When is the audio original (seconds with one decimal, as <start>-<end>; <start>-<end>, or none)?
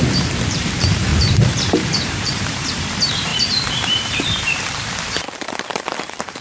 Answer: none